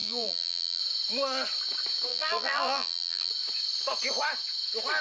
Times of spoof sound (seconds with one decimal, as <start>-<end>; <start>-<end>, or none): 0.0-0.8; 2.1-3.3

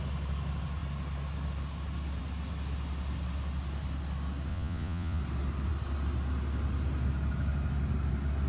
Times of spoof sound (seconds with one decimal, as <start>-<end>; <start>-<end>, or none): 4.5-5.2

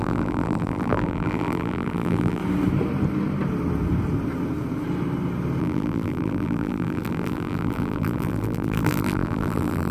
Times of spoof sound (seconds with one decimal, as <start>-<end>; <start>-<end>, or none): 0.0-2.4; 5.6-9.9

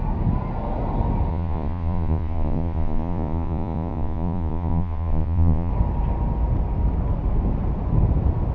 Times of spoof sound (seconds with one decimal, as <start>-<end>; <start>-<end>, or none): 1.3-5.7

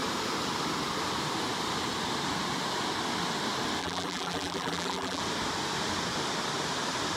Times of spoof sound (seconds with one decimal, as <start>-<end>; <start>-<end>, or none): 3.8-5.2

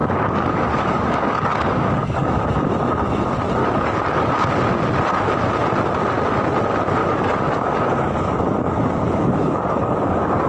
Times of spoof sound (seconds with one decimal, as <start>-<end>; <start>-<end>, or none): 0.0-2.5; 3.6-4.3; 7.0-10.5